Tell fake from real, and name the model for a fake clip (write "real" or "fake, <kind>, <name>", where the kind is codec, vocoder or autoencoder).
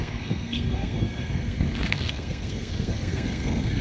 fake, codec, SNAC